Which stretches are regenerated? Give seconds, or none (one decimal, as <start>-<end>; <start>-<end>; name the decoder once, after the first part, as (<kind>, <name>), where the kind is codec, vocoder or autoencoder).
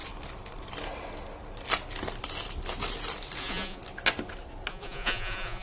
3.4-3.8 (vocoder, Vocos); 4.7-5.6